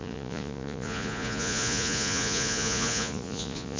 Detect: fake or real fake